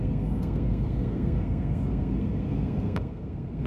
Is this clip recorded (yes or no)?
no